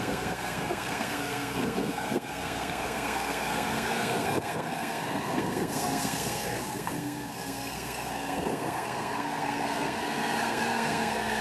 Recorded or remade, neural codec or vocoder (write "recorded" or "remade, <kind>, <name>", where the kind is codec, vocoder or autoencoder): remade, codec, SNAC